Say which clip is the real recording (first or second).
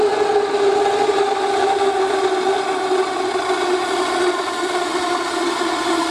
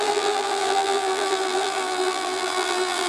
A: first